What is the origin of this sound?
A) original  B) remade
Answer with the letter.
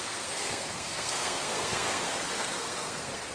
B